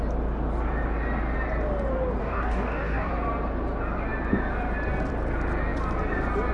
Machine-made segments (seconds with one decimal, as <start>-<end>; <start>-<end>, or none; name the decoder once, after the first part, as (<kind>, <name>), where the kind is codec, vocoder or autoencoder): 2.2-3.1 (codec, DAC)